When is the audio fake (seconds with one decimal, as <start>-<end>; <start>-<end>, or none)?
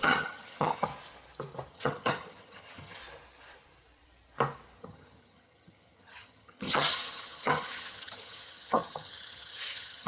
0.0-0.9; 1.7-3.0; 4.8-10.1